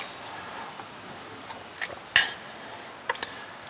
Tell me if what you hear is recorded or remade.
recorded